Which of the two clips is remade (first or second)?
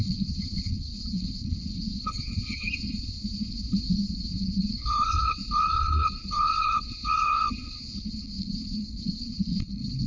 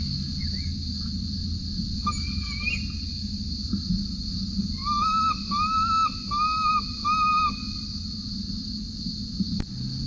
first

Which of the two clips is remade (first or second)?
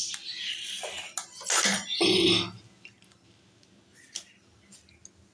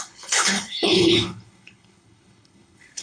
second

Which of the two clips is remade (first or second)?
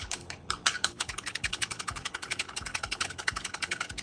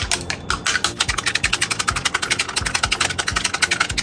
first